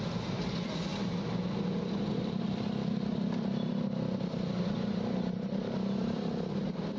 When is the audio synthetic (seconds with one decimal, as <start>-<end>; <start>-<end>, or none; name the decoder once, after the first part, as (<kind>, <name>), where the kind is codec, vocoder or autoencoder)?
0.0-0.9 (vocoder, BigVGAN v2); 2.3-7.0

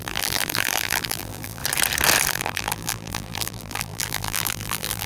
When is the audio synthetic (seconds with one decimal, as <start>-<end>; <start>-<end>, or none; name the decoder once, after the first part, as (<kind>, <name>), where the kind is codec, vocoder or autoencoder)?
0.0-1.6 (vocoder, BigVGAN v2); 2.3-5.1

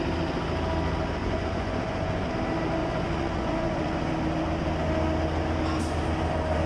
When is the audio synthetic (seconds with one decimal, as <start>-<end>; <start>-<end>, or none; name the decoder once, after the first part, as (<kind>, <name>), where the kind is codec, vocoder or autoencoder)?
1.2-2.3 (vocoder, Vocos); 2.8-4.1

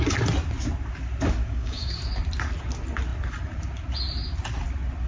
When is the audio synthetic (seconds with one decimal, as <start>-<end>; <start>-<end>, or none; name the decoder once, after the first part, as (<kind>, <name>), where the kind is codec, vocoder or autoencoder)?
1.4-2.0 (codec, DAC)

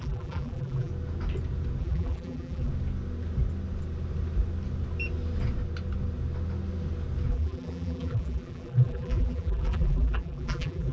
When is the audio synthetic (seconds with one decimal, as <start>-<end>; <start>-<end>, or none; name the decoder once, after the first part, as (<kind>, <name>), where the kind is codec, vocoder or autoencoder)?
0.0-0.9 (vocoder, BigVGAN v2); 1.8-2.7; 7.3-10.9

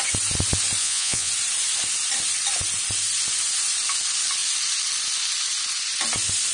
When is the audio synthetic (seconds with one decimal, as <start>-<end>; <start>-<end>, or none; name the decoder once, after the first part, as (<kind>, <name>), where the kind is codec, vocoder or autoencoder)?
0.8-1.3 (vocoder, Vocos)

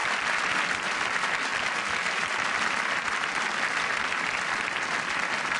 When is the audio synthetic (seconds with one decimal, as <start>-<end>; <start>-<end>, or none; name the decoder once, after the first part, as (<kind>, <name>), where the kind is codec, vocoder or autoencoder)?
none

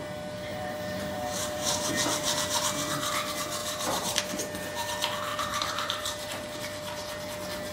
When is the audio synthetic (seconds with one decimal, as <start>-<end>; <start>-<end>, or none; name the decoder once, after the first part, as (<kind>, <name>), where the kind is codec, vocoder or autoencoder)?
0.5-1.9 (vocoder, BigVGAN v2); 3.6-4.2; 5.3-6.4